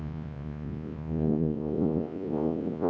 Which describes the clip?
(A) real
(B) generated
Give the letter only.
B